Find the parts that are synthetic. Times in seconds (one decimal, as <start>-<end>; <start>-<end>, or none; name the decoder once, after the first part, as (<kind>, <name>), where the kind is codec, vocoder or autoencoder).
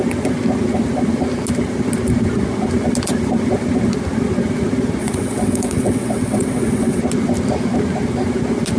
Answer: 5.0-7.0 (vocoder, WaveNeXt)